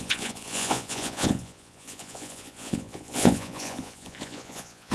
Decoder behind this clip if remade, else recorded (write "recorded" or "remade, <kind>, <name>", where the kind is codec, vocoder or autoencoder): remade, vocoder, Vocos